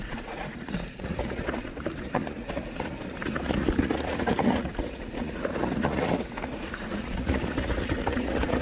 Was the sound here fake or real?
fake